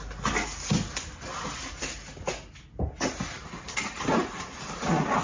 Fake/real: real